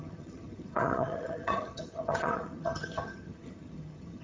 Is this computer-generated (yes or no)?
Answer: yes